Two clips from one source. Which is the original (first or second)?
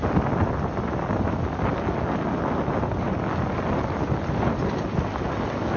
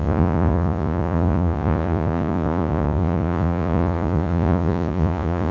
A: first